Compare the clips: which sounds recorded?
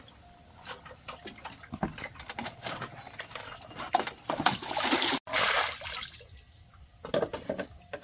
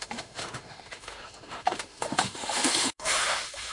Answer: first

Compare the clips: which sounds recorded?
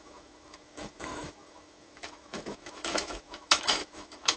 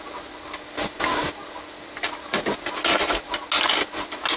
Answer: second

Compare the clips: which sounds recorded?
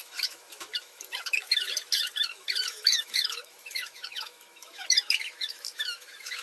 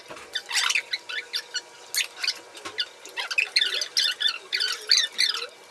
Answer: second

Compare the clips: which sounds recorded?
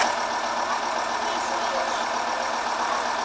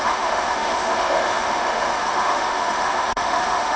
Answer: first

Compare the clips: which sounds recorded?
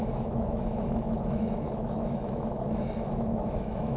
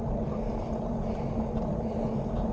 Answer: second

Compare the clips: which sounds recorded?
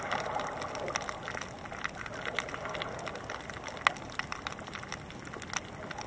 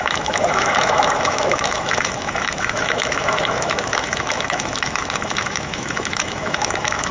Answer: first